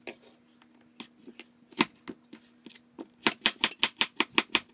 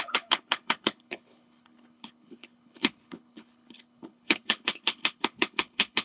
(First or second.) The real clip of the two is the first